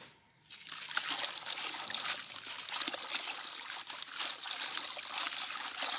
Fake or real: real